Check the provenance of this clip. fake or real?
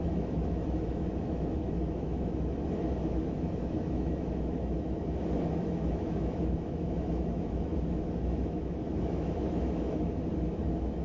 fake